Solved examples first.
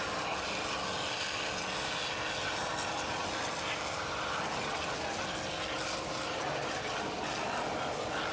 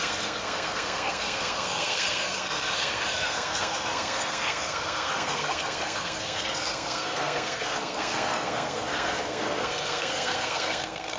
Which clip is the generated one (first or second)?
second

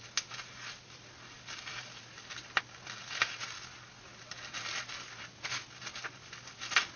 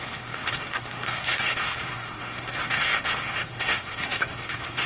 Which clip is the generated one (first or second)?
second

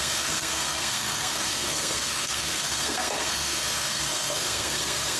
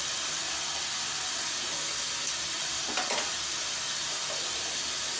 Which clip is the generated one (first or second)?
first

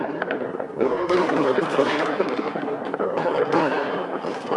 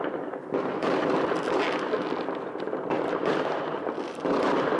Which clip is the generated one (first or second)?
first